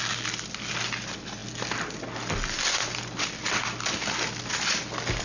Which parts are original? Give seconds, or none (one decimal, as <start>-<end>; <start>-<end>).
0.0-5.2